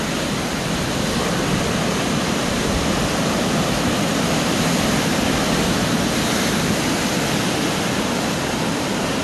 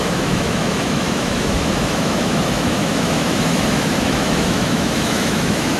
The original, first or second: first